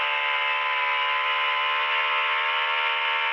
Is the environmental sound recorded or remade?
recorded